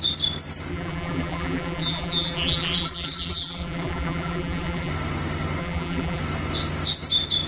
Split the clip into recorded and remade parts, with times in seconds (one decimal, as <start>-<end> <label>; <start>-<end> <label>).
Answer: 0.0-0.7 recorded; 0.7-4.9 remade; 4.9-5.6 recorded; 5.6-6.2 remade; 6.2-7.5 recorded